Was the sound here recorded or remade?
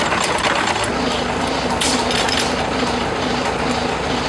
recorded